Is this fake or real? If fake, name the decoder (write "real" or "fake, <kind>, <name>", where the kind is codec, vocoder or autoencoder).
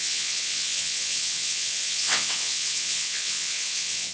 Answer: fake, vocoder, WaveNeXt